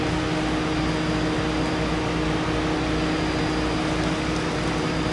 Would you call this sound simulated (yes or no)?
no